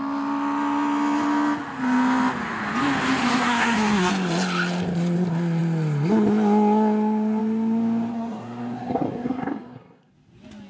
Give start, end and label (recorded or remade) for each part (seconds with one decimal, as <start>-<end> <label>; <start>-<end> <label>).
0.0-3.2 recorded; 3.2-4.1 remade; 4.1-8.1 recorded; 8.1-10.1 remade; 10.1-10.7 recorded